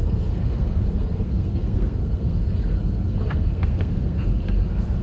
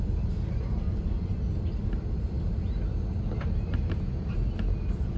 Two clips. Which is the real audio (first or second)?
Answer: second